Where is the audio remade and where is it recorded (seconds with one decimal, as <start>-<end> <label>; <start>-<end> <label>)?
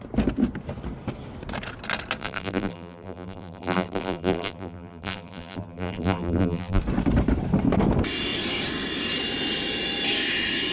0.0-2.2 recorded; 2.2-6.8 remade; 6.8-10.7 recorded